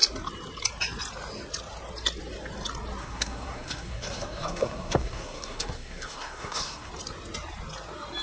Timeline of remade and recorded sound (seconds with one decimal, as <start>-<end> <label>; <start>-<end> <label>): 0.0-3.0 recorded; 3.0-6.9 remade; 6.9-8.2 recorded